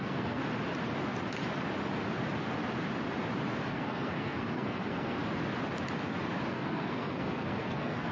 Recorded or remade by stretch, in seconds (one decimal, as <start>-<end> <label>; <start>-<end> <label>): 0.0-0.4 remade; 0.4-3.7 recorded; 3.7-5.2 remade; 5.2-6.5 recorded; 6.5-8.1 remade